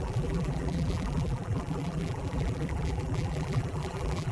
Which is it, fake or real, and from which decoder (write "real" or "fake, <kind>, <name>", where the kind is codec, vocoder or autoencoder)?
fake, vocoder, BigVGAN v2